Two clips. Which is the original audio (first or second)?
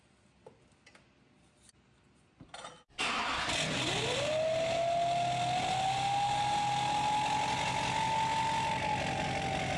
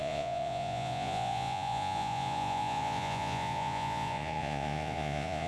first